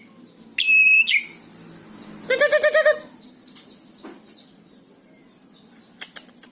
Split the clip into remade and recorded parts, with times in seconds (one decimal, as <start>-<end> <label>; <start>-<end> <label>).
0.0-6.5 recorded